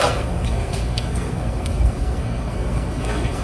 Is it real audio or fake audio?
fake